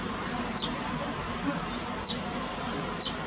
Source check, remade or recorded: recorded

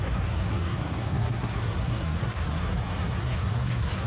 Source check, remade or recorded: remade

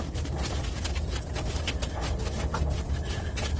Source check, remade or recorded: recorded